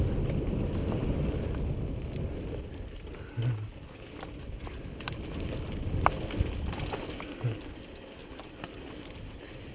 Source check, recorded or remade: recorded